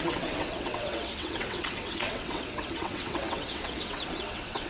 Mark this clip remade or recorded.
remade